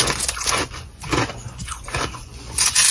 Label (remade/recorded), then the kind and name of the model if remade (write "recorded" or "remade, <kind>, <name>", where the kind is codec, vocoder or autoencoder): remade, vocoder, Vocos